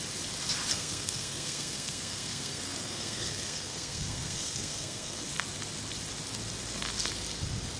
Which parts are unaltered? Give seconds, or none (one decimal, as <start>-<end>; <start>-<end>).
0.0-0.7; 5.2-7.8